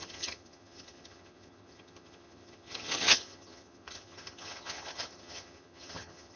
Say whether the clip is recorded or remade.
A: remade